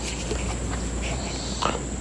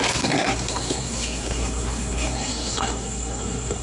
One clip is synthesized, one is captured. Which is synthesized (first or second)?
second